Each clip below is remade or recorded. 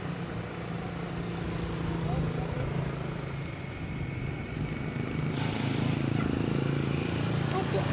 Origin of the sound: recorded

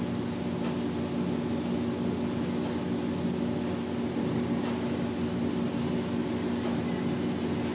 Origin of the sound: recorded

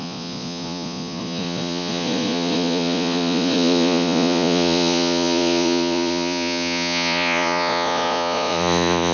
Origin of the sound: remade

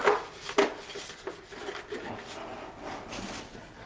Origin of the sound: recorded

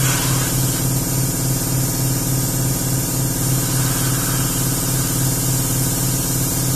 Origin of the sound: recorded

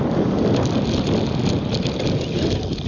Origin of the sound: recorded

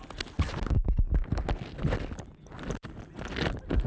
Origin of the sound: recorded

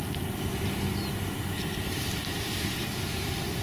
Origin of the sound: recorded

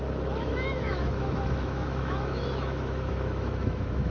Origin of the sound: remade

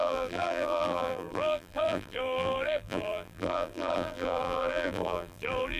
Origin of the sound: remade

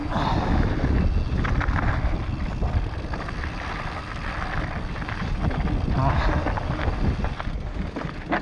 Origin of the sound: recorded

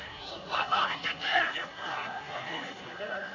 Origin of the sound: remade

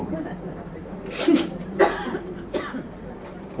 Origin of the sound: remade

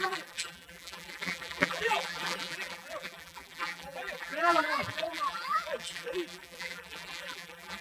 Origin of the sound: remade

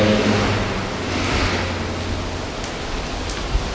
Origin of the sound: recorded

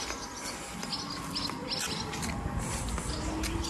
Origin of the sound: recorded